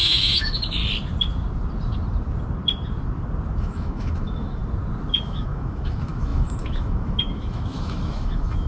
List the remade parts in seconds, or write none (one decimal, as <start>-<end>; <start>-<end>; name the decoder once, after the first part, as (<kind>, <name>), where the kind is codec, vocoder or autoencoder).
0.0-0.8 (autoencoder, DAC-VAE); 3.6-4.6; 5.2-8.7

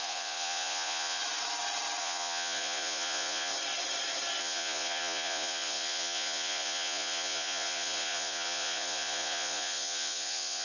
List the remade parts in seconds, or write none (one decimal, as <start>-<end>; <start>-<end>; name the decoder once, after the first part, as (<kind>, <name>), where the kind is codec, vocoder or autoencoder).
0.0-1.2 (vocoder, Vocos); 2.0-3.5; 4.4-10.6

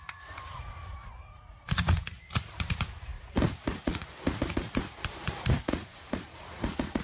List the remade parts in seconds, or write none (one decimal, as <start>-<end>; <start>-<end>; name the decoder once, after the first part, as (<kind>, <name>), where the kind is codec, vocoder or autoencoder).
0.0-7.0 (vocoder, Vocos)

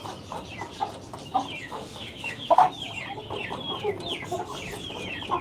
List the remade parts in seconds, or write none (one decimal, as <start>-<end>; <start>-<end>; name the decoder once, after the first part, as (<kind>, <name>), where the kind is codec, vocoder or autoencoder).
1.7-2.7 (autoencoder, DAC-VAE)

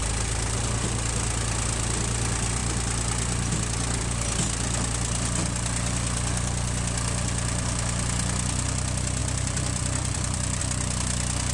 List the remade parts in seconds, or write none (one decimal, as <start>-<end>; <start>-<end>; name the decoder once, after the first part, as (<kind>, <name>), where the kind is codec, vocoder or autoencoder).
9.2-10.6 (vocoder, BigVGAN v2)

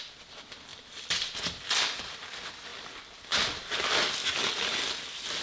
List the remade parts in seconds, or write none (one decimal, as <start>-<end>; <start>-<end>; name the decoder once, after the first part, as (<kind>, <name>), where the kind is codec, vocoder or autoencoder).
4.2-4.8 (codec, DAC)

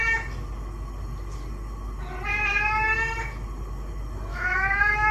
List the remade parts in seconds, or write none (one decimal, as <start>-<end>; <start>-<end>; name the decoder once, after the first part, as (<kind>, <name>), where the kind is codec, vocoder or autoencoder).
4.3-5.1 (autoencoder, DAC-VAE)

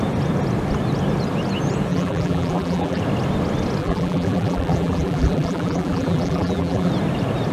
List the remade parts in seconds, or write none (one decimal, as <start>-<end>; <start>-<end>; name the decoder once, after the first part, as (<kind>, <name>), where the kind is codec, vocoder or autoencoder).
1.9-3.0 (vocoder, BigVGAN v2); 3.8-6.9